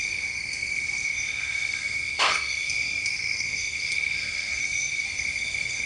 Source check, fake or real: fake